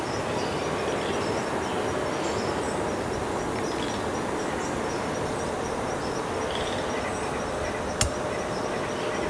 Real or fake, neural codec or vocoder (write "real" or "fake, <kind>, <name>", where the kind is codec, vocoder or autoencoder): real